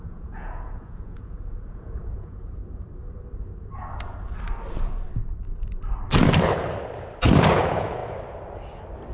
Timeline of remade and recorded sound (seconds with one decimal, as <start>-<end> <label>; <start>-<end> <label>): 0.0-2.6 remade; 2.6-7.5 recorded; 7.5-8.0 remade; 8.0-9.1 recorded